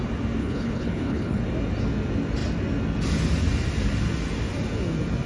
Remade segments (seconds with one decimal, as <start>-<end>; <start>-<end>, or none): 0.4-1.4